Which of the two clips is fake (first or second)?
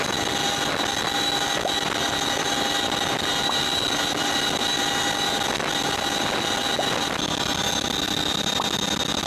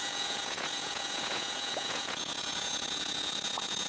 second